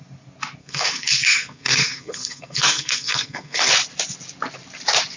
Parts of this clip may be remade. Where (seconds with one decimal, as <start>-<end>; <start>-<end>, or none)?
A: 0.6-3.7